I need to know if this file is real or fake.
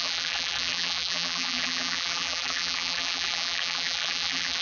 fake